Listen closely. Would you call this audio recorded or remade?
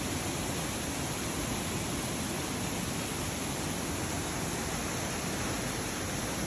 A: recorded